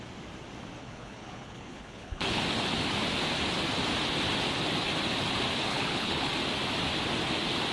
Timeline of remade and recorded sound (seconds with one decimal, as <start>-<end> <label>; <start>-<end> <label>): 0.0-0.8 recorded; 0.8-2.4 remade; 2.4-5.7 recorded; 5.7-6.3 remade; 6.3-7.7 recorded

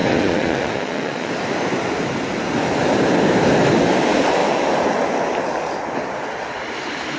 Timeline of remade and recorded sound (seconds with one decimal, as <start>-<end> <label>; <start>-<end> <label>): 0.0-1.3 remade; 1.3-7.2 recorded

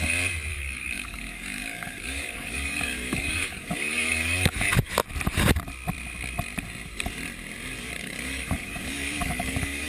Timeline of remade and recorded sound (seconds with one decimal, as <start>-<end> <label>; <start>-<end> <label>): 0.0-0.5 recorded; 0.5-4.7 remade; 4.7-8.0 recorded; 8.0-9.9 remade

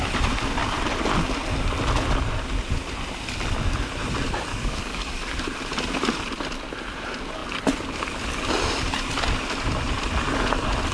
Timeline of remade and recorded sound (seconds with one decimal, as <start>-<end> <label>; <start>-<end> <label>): 0.0-4.5 recorded; 4.5-5.4 remade; 5.4-10.9 recorded

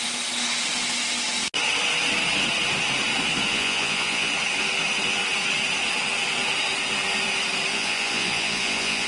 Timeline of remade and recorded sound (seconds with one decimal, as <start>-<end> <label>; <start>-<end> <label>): 0.0-3.5 recorded; 3.5-4.3 remade; 4.3-7.7 recorded; 7.7-9.1 remade

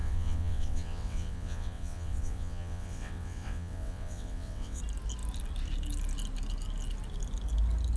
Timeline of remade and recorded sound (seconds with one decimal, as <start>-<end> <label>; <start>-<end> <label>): 0.0-4.8 remade; 4.8-8.0 recorded

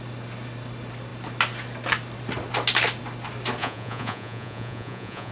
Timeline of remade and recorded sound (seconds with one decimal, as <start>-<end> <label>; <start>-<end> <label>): 0.0-3.6 recorded; 3.6-5.3 remade

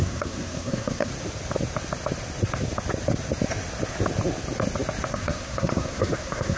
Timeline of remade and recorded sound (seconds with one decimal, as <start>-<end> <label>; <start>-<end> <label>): 0.0-1.1 remade; 1.1-5.1 recorded; 5.1-6.6 remade